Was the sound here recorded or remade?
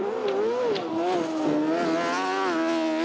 recorded